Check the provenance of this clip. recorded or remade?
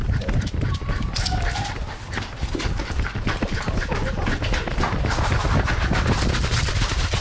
recorded